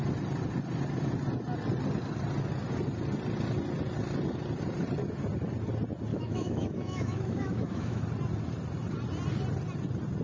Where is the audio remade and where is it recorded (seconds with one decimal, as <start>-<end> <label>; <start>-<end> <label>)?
0.0-6.1 recorded; 6.1-8.0 remade; 8.0-10.2 recorded